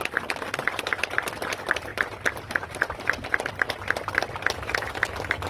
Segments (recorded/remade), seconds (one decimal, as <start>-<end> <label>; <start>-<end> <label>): 0.0-5.5 recorded